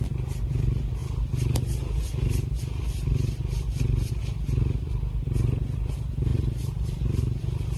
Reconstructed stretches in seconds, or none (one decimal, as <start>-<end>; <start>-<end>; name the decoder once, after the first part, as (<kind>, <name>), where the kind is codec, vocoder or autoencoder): 6.3-7.2 (vocoder, BigVGAN v2)